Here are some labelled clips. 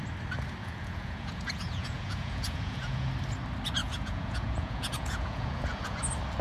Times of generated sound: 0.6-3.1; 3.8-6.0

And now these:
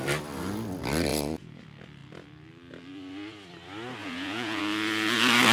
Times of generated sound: 1.1-1.6; 4.0-4.6

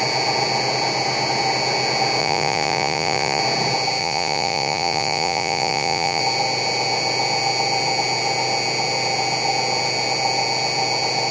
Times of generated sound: 2.2-3.4; 4.0-6.2

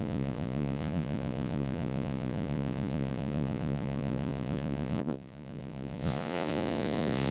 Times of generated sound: 0.0-7.3

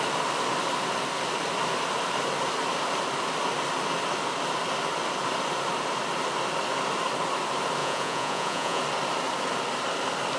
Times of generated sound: 7.8-8.8

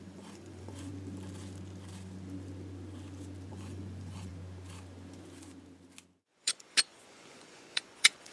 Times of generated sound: 0.0-0.9; 3.5-4.3; 6.2-8.3

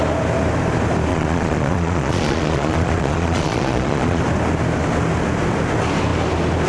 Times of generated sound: 1.1-4.2

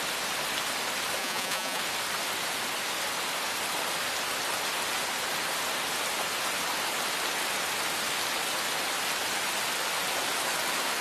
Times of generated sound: 1.2-1.8